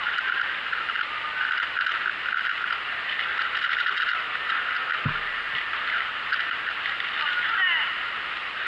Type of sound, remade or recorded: recorded